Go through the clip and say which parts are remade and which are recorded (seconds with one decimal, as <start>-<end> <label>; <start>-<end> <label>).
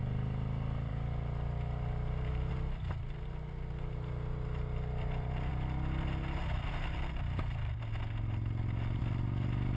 0.0-9.8 recorded